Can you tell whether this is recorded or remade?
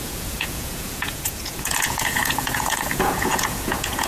remade